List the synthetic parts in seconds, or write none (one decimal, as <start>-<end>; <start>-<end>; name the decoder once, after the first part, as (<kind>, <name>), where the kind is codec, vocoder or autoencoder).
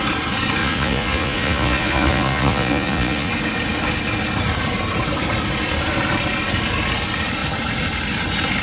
0.6-3.3 (vocoder, Vocos)